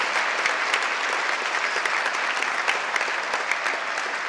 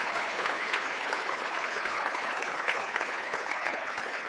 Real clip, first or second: first